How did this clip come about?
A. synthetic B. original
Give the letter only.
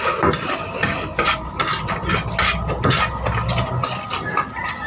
B